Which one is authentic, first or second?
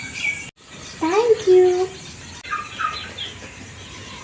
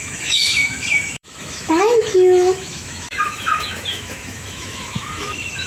first